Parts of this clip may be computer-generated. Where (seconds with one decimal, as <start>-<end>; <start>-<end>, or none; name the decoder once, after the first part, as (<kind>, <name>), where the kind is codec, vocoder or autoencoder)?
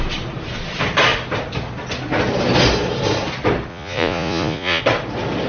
3.7-4.8 (vocoder, Vocos)